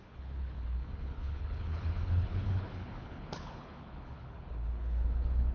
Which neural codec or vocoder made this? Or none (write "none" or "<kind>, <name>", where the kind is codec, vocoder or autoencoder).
codec, HILCodec